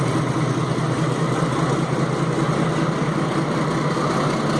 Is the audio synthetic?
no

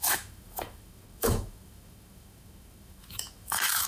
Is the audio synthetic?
yes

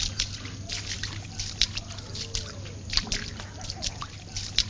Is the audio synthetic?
no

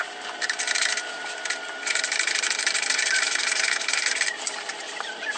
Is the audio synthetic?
yes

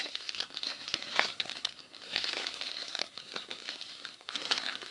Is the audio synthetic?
yes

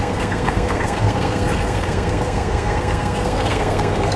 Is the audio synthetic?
yes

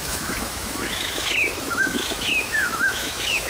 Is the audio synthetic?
yes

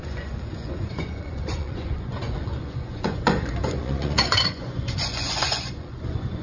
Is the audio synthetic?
yes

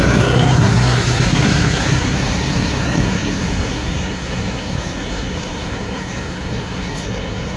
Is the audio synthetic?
yes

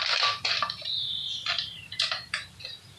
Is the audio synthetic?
yes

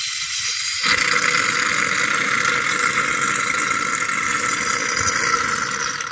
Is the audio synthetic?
no